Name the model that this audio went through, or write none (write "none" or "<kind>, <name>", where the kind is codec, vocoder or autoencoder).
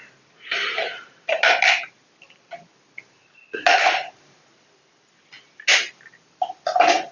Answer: none